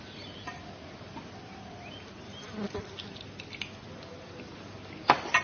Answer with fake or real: real